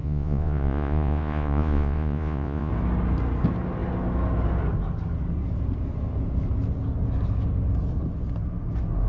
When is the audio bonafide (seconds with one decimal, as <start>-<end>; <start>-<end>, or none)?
2.7-9.1